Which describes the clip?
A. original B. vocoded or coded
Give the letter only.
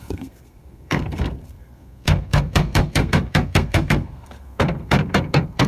B